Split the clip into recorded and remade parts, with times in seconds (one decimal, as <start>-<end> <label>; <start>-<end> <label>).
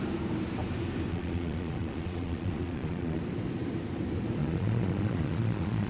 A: 0.0-1.1 recorded; 1.1-3.2 remade; 3.2-4.4 recorded; 4.4-5.9 remade